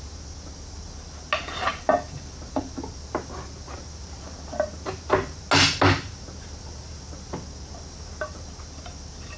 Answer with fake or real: real